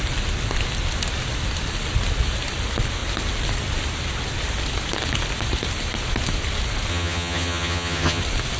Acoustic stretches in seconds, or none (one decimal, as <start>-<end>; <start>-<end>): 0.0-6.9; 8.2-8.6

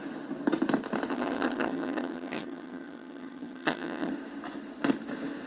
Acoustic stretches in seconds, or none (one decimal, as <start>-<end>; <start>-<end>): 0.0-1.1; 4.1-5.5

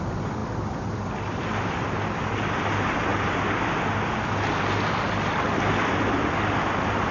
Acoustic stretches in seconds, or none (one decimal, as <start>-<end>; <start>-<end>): 0.0-7.1